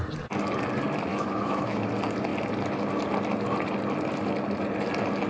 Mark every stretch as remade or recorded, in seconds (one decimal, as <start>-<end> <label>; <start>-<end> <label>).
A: 0.0-1.1 recorded; 1.1-1.9 remade; 1.9-5.3 recorded